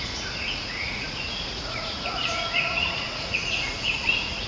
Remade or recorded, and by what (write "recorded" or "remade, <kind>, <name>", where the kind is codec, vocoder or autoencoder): remade, vocoder, Vocos